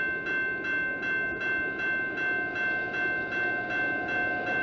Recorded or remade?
recorded